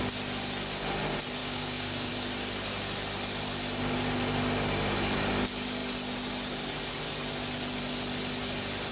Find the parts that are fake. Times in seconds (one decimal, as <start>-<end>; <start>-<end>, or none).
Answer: 1.4-2.1

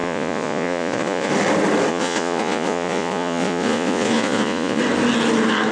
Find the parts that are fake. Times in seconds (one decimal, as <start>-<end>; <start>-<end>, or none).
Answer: 0.0-1.3; 1.9-4.8

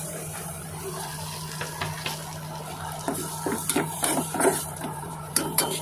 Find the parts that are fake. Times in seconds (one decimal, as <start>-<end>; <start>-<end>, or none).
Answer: 0.0-1.1; 3.8-5.8

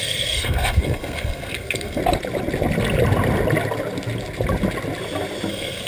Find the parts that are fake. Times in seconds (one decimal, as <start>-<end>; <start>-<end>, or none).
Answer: 0.0-2.0; 5.5-5.9